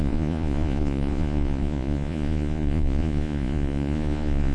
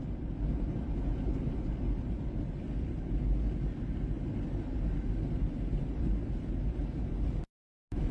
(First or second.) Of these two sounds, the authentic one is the second